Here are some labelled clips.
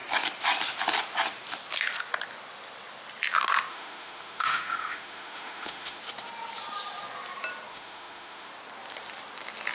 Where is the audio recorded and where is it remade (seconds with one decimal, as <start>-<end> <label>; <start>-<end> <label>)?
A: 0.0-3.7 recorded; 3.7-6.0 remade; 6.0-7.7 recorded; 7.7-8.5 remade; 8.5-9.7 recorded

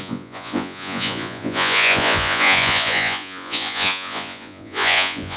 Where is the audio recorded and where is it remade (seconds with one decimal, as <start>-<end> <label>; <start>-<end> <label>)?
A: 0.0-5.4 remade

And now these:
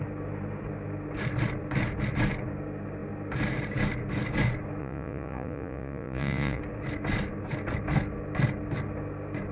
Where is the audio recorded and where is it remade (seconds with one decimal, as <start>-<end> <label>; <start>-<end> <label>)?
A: 0.0-4.8 recorded; 4.8-6.6 remade; 6.6-9.5 recorded

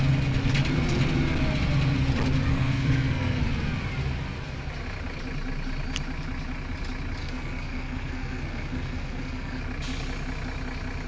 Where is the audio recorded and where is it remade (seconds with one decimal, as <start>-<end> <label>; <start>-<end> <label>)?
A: 0.0-2.5 recorded; 2.5-3.4 remade; 3.4-7.2 recorded; 7.2-9.6 remade; 9.6-11.1 recorded